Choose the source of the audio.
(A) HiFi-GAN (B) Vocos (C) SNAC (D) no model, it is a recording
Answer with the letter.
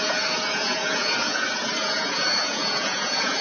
B